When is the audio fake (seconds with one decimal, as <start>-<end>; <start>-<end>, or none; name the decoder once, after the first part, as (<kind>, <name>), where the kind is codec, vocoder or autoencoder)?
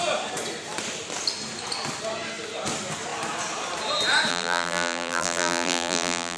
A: 4.3-6.4 (vocoder, BigVGAN v2)